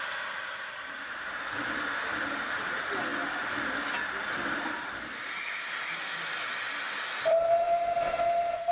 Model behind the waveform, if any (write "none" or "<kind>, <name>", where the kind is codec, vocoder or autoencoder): none